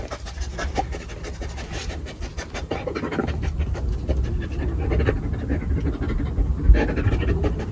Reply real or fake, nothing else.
real